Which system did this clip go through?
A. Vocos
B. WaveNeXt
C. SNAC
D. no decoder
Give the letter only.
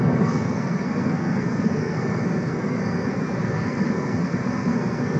C